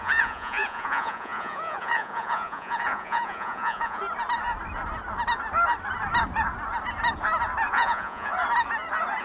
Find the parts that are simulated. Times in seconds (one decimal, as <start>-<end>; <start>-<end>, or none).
0.0-4.0; 7.7-8.3